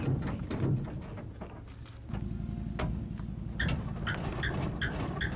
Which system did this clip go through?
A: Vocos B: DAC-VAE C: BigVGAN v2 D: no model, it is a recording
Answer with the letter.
D